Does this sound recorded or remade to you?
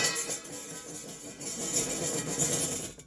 recorded